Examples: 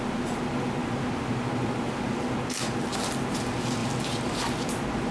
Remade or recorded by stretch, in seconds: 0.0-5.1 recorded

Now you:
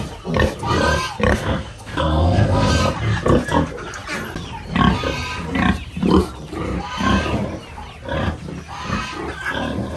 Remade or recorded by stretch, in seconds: 0.0-1.3 recorded; 1.3-2.7 remade; 2.7-10.0 recorded